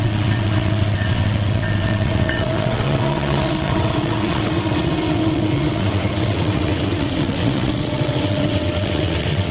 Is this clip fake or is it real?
fake